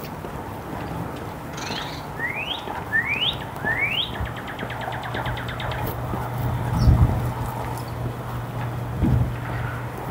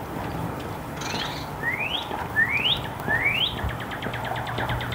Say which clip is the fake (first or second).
second